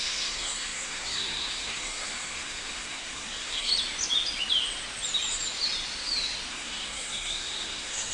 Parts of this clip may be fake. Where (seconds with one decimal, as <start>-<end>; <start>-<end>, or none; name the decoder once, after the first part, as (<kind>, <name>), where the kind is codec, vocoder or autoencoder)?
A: 0.0-3.7 (codec, SNAC); 6.5-8.1